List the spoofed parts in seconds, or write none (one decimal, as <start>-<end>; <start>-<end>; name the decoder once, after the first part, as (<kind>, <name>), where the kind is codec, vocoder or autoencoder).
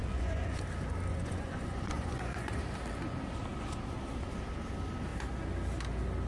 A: 0.0-0.6 (vocoder, Vocos); 1.1-2.6